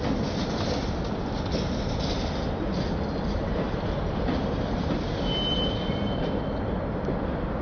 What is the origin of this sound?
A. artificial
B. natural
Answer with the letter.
B